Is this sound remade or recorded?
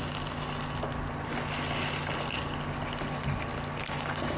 recorded